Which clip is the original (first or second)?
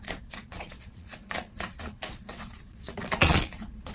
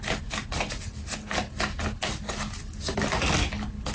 second